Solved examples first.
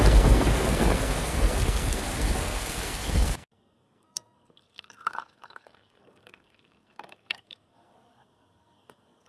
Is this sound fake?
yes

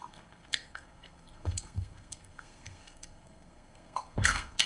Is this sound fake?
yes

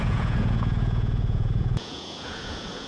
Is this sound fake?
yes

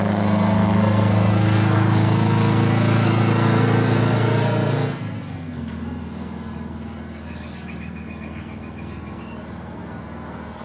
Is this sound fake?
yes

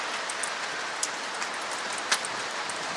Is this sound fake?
no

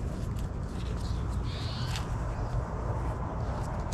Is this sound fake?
no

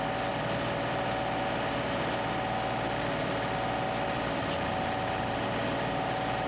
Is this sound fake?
no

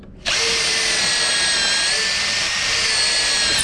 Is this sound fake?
no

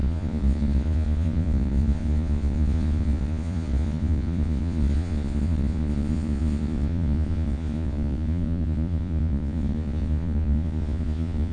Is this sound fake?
yes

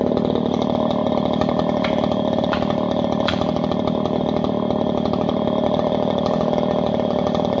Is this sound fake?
yes